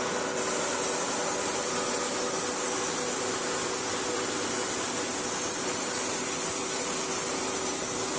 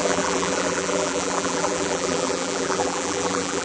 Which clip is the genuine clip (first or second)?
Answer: first